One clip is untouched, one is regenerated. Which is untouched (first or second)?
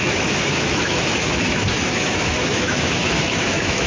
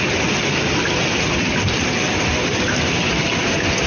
second